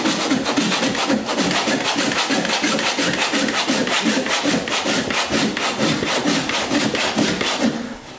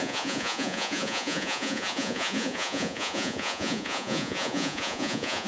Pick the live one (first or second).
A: first